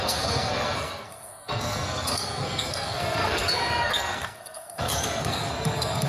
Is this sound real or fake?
fake